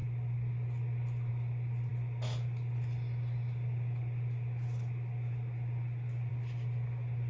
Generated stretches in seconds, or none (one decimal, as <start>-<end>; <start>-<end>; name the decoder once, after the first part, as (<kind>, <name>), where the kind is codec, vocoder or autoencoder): none